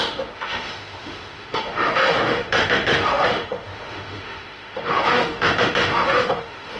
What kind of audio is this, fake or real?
fake